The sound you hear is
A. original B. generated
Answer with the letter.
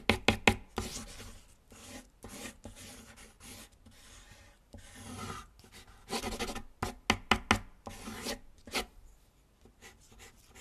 A